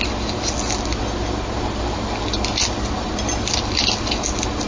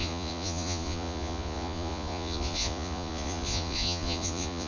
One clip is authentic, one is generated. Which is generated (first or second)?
second